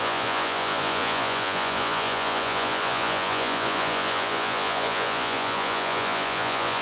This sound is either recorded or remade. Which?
remade